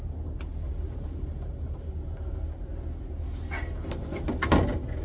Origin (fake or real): real